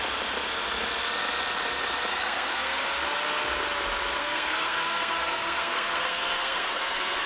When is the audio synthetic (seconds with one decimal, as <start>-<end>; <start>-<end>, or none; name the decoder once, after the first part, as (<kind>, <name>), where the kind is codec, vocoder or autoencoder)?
2.1-2.8 (codec, SNAC); 4.2-7.3